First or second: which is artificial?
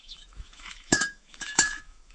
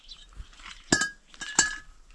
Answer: first